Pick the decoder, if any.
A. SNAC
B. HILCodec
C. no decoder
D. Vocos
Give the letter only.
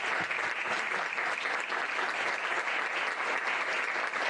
C